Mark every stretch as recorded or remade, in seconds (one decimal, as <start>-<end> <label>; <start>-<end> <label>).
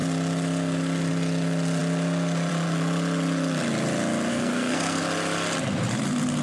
0.0-4.3 recorded; 4.3-5.0 remade; 5.0-6.4 recorded